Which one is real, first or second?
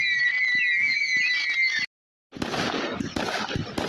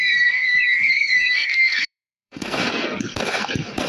first